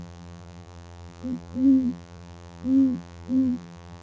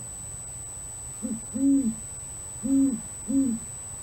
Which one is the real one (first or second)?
second